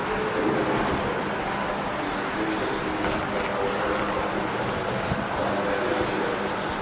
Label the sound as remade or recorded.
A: recorded